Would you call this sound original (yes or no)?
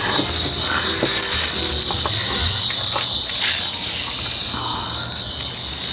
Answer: yes